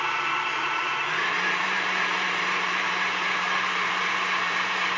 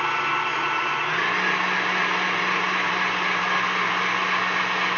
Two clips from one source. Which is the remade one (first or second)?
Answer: first